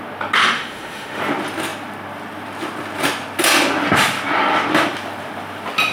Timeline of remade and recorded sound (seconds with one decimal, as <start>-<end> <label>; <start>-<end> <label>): 0.0-0.4 recorded; 0.4-1.2 remade; 1.2-5.9 recorded